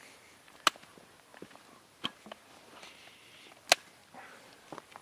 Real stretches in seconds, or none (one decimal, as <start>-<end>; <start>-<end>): 0.0-5.0

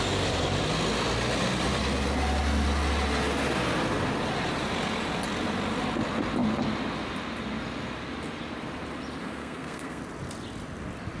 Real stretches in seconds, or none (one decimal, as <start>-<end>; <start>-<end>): 0.0-9.2; 10.0-11.2

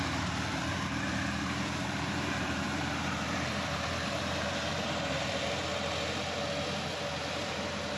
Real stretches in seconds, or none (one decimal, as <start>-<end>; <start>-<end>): 5.7-7.3